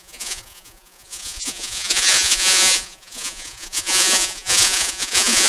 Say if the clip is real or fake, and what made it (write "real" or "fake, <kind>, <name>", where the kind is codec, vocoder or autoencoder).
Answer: fake, vocoder, Vocos